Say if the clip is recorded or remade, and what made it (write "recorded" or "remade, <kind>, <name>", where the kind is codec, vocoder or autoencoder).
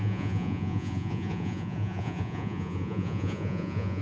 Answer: remade, vocoder, Vocos